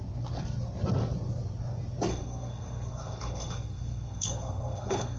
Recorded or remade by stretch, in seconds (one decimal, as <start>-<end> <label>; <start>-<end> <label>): 0.0-2.1 recorded; 2.1-5.2 remade